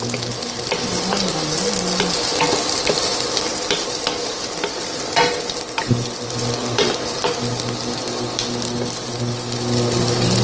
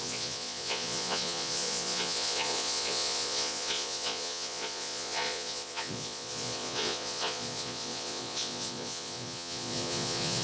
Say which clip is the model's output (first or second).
second